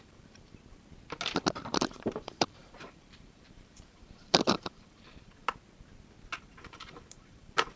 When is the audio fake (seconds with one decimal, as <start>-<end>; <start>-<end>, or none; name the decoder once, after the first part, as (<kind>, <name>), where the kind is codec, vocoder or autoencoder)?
0.0-0.6 (vocoder, BigVGAN v2); 1.7-5.4; 6.4-7.8